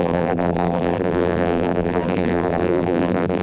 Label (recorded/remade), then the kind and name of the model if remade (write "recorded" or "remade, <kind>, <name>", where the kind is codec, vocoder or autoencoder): remade, vocoder, BigVGAN v2